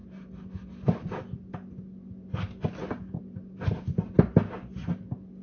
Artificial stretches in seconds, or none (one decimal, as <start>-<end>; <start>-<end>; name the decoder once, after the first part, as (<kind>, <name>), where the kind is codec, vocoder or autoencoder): none